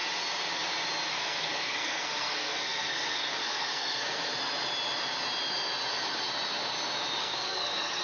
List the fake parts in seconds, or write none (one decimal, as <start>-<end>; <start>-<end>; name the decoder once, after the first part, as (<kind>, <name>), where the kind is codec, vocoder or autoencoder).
1.1-4.3 (codec, SNAC); 7.2-8.0